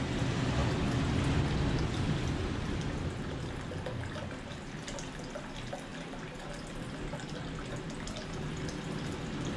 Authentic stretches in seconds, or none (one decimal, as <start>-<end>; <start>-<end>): 0.0-9.6